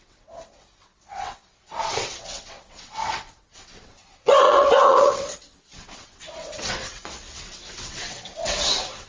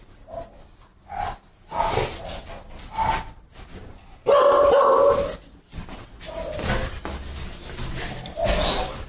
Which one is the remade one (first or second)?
first